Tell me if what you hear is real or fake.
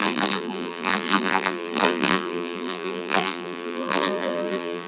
fake